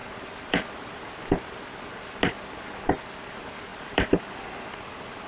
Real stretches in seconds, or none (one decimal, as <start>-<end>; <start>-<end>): 0.0-3.7; 4.4-5.3